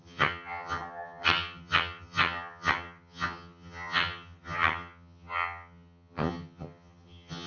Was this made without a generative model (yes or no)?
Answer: no